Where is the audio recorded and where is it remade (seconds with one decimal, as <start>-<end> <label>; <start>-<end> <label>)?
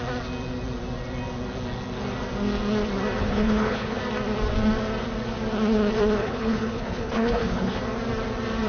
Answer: 0.0-3.2 recorded; 3.2-4.0 remade; 4.0-6.2 recorded; 6.2-7.8 remade; 7.8-8.7 recorded